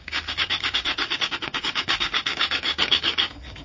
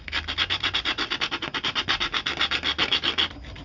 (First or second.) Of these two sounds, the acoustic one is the second